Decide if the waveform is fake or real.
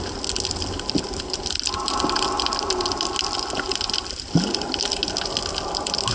real